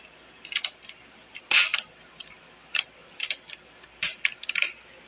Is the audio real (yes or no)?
yes